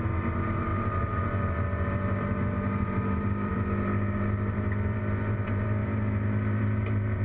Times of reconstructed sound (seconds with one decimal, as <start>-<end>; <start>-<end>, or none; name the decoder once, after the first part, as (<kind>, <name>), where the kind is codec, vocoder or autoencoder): 0.0-7.2 (vocoder, BigVGAN v2)